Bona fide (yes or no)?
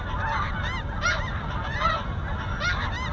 yes